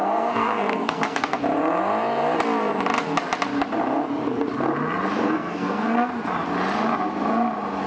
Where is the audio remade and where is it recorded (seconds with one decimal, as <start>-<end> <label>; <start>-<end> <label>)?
0.0-1.4 remade; 1.4-5.2 recorded; 5.2-6.1 remade; 6.1-7.9 recorded